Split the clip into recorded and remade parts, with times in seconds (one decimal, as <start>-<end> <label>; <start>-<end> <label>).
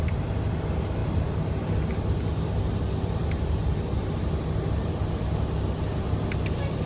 0.0-1.0 recorded; 1.0-2.5 remade; 2.5-6.9 recorded